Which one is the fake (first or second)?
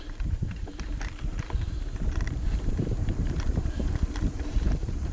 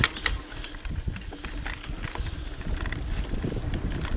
first